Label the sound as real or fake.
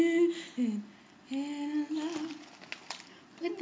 real